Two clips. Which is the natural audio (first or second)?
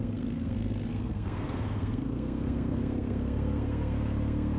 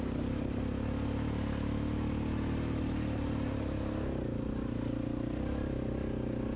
second